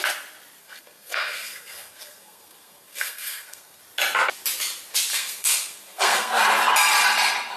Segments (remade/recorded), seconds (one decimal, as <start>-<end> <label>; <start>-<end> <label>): 0.0-0.6 recorded; 0.6-3.8 remade; 3.8-5.1 recorded; 5.1-6.4 remade; 6.4-7.6 recorded